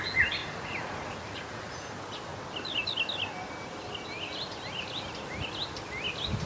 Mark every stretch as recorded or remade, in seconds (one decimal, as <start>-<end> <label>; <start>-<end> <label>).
0.0-0.4 recorded; 0.4-1.9 remade; 1.9-6.5 recorded